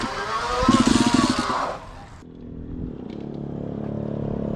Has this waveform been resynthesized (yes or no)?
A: no